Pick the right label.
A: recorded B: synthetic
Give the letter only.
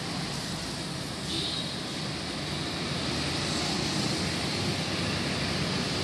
A